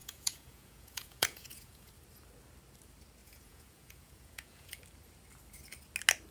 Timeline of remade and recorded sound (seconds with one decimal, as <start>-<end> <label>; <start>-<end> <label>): 0.0-1.9 remade; 1.9-3.2 recorded; 3.2-4.8 remade; 4.8-6.3 recorded